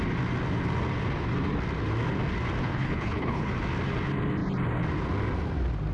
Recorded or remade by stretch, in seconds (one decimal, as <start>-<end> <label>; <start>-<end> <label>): 0.0-2.6 recorded; 2.6-3.5 remade; 3.5-5.9 recorded